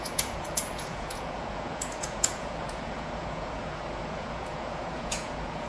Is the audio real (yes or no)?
no